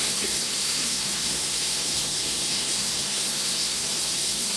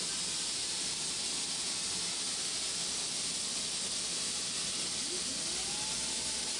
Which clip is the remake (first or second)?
first